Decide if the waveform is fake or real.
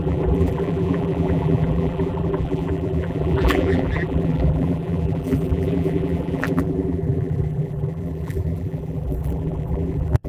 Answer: fake